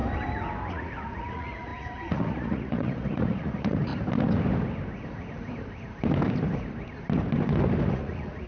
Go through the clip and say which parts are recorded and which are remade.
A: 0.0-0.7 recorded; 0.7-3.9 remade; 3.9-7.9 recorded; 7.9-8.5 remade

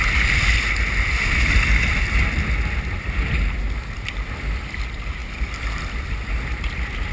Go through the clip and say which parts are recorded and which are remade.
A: 0.0-7.1 recorded

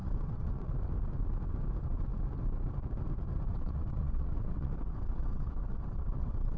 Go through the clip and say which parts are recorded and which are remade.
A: 0.0-0.7 remade; 0.7-3.5 recorded; 3.5-6.6 remade

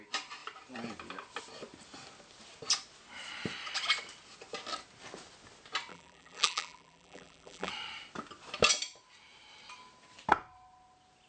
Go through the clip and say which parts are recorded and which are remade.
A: 0.0-5.9 recorded; 5.9-7.7 remade; 7.7-11.3 recorded

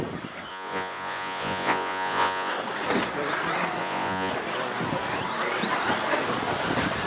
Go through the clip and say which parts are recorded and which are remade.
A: 0.0-0.5 recorded; 0.5-2.5 remade; 2.5-3.8 recorded; 3.8-4.3 remade; 4.3-7.1 recorded